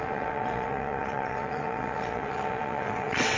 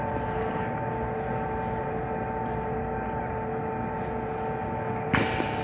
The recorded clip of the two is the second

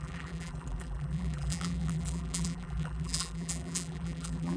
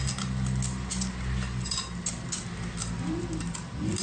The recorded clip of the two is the second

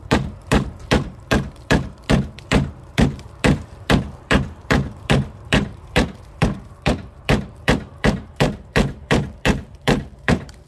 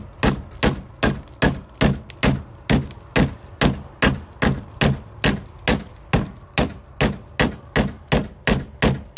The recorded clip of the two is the second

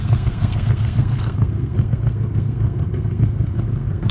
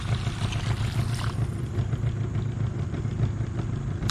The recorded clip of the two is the second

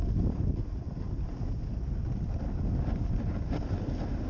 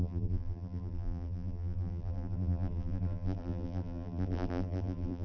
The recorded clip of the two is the first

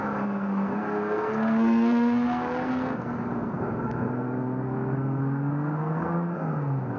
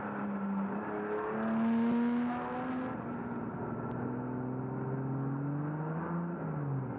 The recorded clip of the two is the second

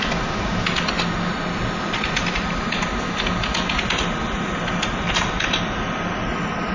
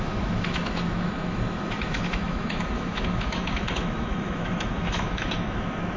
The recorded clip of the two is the first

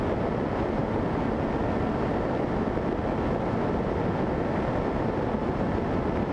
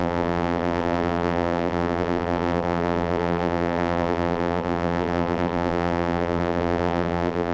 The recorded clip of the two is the first